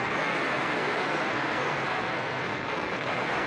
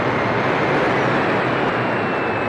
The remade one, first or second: first